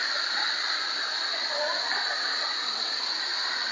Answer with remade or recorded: recorded